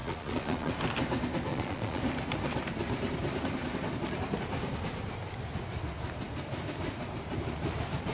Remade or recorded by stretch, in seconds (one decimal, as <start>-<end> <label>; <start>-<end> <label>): 0.0-0.7 remade; 0.7-1.5 recorded; 1.5-2.0 remade; 2.0-8.1 recorded